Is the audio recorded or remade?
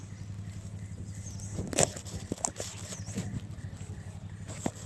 recorded